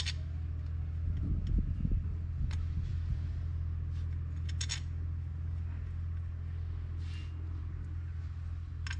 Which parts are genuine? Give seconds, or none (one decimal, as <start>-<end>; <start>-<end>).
0.0-9.0